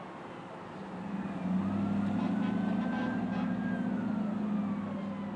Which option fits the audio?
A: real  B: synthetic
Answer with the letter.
A